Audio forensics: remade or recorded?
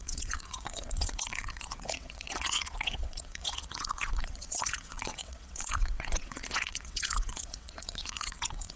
remade